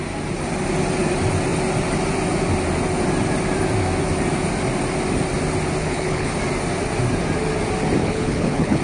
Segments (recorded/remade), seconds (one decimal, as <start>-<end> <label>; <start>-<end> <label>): 0.0-5.8 recorded; 5.8-6.3 remade; 6.3-8.0 recorded; 8.0-8.8 remade